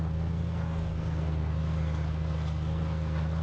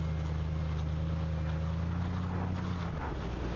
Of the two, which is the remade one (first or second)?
first